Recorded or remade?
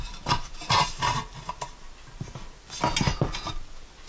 recorded